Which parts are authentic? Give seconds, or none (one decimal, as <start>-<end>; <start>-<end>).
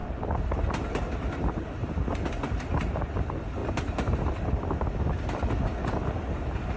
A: 0.0-6.8